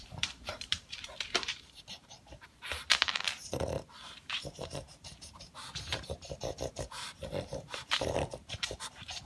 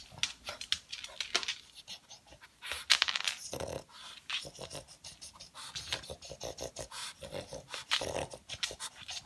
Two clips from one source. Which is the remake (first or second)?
first